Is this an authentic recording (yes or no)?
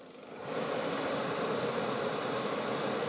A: yes